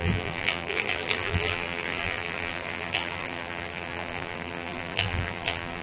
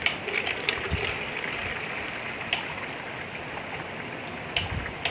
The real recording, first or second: second